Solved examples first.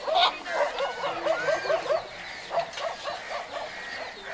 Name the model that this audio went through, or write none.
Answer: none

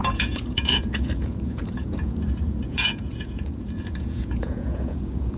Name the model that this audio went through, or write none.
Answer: vocoder, Vocos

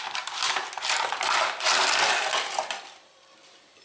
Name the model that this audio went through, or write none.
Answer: none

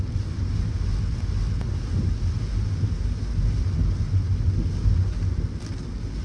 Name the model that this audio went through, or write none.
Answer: none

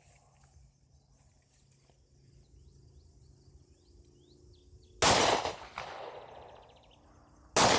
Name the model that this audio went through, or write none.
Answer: none